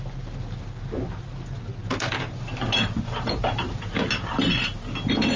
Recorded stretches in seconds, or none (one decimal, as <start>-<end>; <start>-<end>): 0.0-1.8; 4.0-5.4